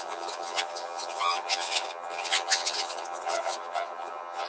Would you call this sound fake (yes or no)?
yes